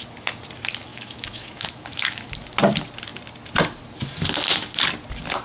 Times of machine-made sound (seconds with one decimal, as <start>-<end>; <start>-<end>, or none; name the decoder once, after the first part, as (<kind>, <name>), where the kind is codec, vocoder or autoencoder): 0.9-2.3 (autoencoder, DAC-VAE)